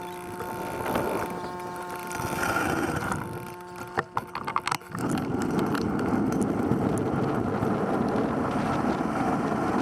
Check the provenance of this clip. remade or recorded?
recorded